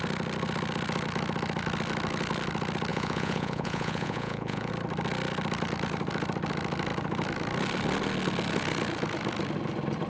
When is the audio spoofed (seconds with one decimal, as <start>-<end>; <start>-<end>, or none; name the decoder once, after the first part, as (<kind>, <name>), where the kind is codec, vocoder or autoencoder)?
2.9-4.7 (vocoder, Vocos)